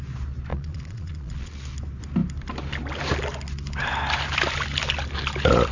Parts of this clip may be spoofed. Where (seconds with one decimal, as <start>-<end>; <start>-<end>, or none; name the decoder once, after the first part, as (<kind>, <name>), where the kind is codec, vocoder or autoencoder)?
0.5-1.6 (vocoder, Vocos)